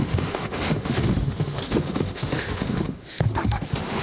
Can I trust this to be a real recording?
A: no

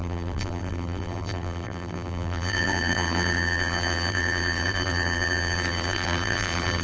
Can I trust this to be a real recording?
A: no